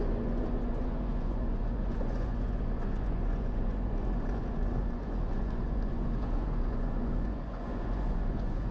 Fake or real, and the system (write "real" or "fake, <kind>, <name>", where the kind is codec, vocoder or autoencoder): fake, vocoder, Vocos